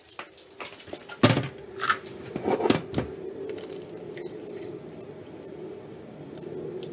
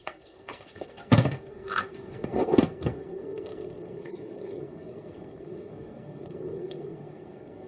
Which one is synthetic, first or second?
second